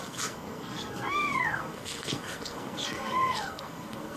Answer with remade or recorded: remade